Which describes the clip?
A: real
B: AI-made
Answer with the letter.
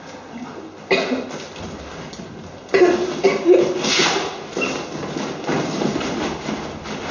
A